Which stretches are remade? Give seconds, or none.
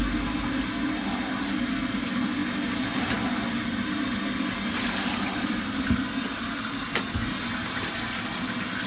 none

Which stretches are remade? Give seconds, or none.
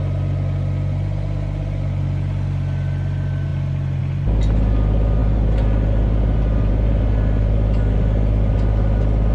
none